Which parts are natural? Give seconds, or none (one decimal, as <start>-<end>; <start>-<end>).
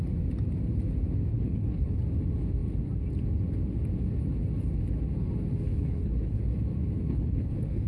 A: 0.0-1.3; 2.0-5.7; 6.4-7.1